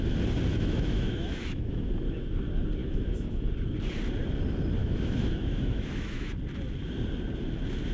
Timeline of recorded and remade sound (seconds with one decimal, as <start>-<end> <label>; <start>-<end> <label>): 0.0-0.5 recorded; 0.5-1.9 remade; 1.9-2.8 recorded; 2.8-3.5 remade; 3.5-4.8 recorded; 4.8-6.3 remade; 6.3-7.9 recorded